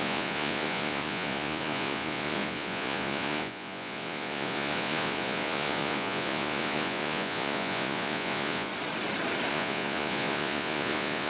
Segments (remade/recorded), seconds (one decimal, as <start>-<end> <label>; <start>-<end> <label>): 0.0-8.7 remade; 8.7-9.5 recorded; 9.5-11.3 remade